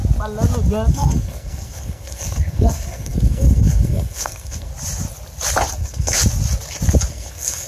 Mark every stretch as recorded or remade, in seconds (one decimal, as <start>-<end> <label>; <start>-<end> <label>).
0.0-0.9 recorded; 0.9-4.7 remade; 4.7-5.7 recorded; 5.7-6.2 remade; 6.2-7.1 recorded; 7.1-7.7 remade